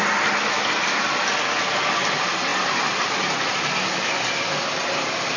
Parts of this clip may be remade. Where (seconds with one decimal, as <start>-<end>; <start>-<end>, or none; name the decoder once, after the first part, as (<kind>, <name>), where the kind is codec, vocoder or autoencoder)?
none